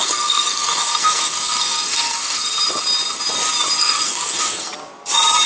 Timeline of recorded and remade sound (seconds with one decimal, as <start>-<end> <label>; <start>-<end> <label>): 0.0-2.5 remade; 2.5-3.8 recorded; 3.8-4.7 remade; 4.7-5.5 recorded